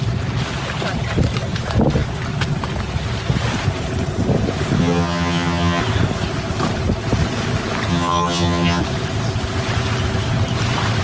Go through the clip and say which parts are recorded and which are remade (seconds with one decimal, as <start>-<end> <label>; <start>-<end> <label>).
0.0-4.8 recorded; 4.8-5.8 remade; 5.8-7.9 recorded; 7.9-8.8 remade; 8.8-11.0 recorded